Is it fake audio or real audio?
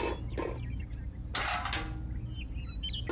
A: real